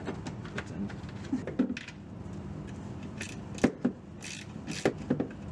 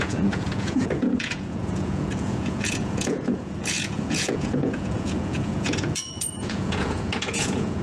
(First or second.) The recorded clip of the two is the first